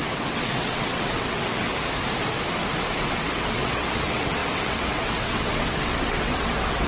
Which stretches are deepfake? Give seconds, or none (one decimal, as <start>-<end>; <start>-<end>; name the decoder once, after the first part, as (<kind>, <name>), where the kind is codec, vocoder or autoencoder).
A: 0.0-1.7 (vocoder, WaveNeXt); 3.1-6.9